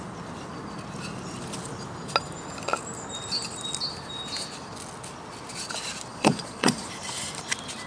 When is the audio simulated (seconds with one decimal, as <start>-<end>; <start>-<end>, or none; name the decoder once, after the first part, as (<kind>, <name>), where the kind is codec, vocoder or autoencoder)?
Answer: 6.1-6.9 (vocoder, Vocos)